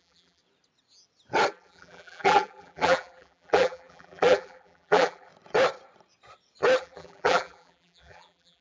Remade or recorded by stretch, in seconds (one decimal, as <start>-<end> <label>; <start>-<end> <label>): 0.0-0.4 remade; 0.4-1.5 recorded; 1.5-5.3 remade; 5.3-6.8 recorded; 6.8-8.6 remade